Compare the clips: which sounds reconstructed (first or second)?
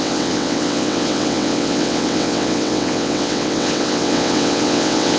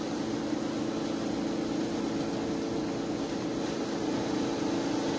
first